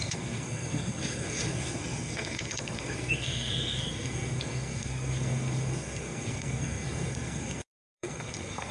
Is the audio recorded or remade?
remade